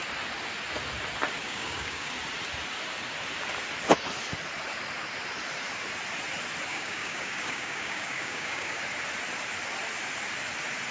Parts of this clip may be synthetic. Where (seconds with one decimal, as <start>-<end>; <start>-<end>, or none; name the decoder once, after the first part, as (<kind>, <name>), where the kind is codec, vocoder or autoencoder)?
1.4-2.1 (codec, DAC); 6.7-8.8